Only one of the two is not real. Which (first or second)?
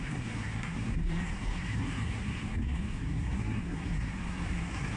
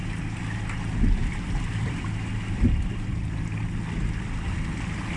first